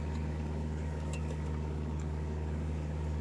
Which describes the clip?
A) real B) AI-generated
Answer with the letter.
B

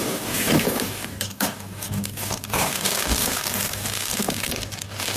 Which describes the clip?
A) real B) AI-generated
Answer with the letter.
B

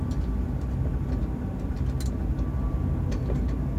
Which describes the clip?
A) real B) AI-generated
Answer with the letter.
A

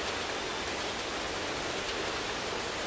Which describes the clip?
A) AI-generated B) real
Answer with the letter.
B